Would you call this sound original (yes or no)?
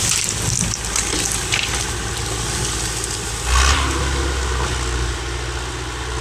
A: yes